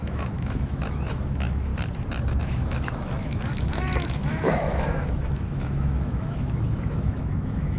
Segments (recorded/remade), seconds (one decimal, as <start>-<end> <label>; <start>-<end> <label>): 0.0-1.7 remade; 1.7-2.4 recorded; 2.4-7.8 remade